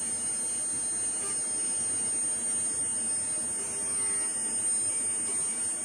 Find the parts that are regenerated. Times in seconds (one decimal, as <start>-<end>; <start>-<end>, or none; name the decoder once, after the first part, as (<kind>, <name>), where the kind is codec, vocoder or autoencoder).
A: none